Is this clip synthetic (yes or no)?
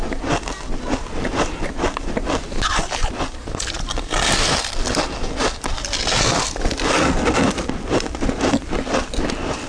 no